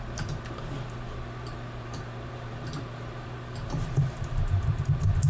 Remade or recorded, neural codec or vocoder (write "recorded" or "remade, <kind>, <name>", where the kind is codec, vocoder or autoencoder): remade, vocoder, BigVGAN v2